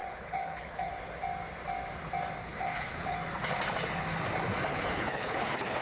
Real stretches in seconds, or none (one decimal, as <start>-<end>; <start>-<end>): 0.9-2.4; 3.2-4.7